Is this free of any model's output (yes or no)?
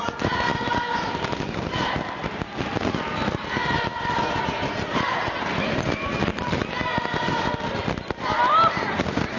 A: yes